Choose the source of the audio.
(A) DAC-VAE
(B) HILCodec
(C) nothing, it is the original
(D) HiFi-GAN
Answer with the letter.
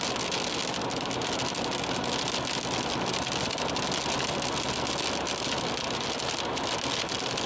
C